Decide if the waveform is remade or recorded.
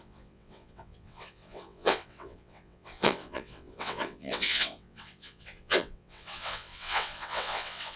remade